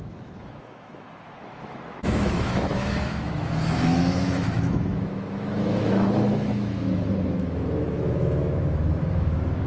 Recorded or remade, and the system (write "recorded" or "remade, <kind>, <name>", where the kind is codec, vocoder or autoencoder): remade, autoencoder, DAC-VAE